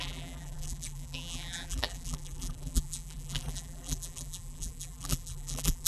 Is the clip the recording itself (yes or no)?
no